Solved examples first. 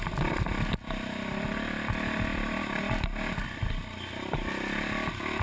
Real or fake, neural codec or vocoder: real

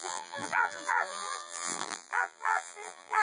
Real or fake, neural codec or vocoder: fake, vocoder, BigVGAN v2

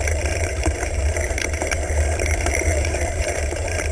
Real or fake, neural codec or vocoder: fake, vocoder, BigVGAN v2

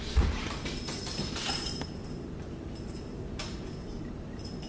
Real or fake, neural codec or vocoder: fake, vocoder, BigVGAN v2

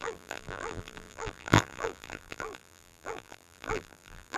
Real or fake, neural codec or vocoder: fake, vocoder, BigVGAN v2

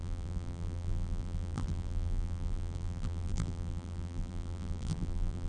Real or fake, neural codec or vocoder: fake, vocoder, BigVGAN v2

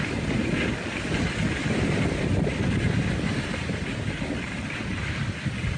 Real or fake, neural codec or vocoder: real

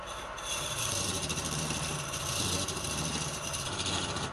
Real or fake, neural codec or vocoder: fake, vocoder, BigVGAN v2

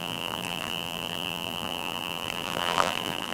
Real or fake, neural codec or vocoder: fake, vocoder, BigVGAN v2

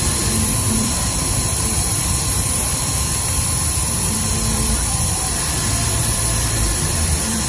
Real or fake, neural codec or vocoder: fake, vocoder, BigVGAN v2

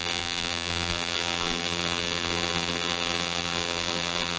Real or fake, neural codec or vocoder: fake, vocoder, BigVGAN v2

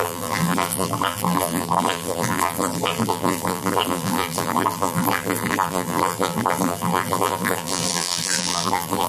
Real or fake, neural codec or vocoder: fake, vocoder, BigVGAN v2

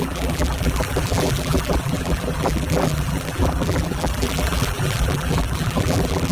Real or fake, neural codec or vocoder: fake, vocoder, BigVGAN v2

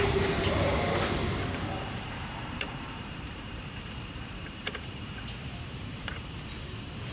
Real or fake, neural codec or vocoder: fake, vocoder, BigVGAN v2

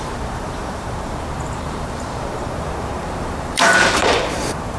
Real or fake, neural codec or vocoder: fake, vocoder, BigVGAN v2